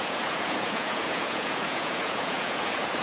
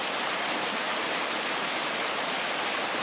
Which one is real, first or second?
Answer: second